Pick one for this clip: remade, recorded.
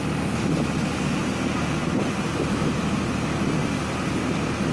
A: recorded